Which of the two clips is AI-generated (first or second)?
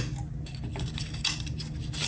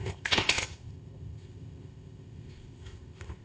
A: second